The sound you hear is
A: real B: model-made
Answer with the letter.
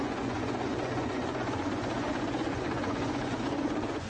B